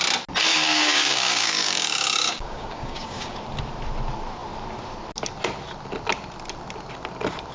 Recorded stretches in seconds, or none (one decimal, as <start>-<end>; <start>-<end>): 0.0-0.5; 3.4-7.5